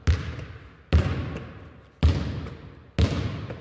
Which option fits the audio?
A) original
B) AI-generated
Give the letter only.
A